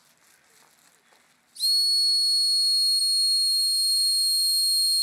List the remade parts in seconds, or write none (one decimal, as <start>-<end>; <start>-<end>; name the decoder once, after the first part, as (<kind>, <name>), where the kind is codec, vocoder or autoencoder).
none